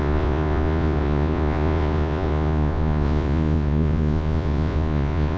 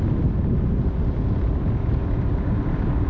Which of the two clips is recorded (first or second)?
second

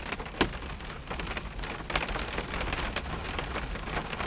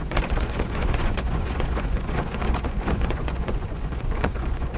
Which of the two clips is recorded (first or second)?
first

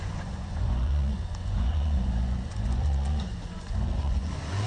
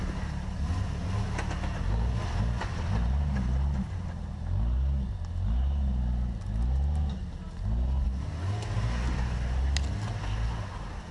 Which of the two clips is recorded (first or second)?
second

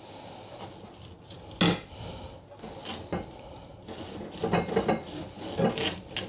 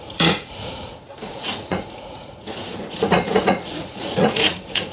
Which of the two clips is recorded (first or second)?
first